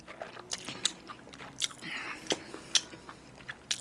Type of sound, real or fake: real